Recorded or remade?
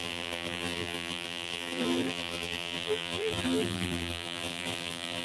remade